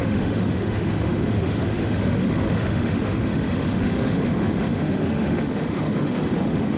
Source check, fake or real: fake